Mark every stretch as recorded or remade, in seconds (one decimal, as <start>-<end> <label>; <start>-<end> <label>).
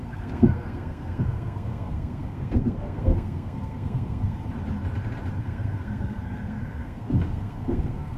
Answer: 0.0-4.4 remade; 4.4-5.4 recorded; 5.4-8.2 remade